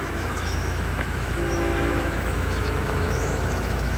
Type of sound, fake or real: fake